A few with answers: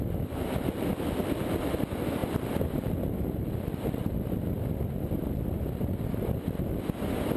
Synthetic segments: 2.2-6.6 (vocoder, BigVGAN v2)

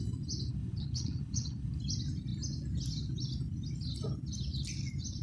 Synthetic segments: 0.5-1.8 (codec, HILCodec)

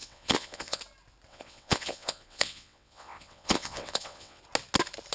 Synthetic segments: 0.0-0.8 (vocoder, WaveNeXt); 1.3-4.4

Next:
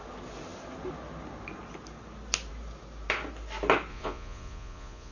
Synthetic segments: 3.9-5.1 (vocoder, Vocos)